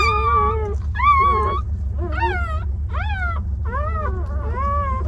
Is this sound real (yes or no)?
yes